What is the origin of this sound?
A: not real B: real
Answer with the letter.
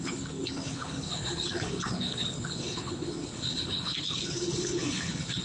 A